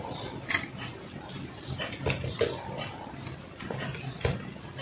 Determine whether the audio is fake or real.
real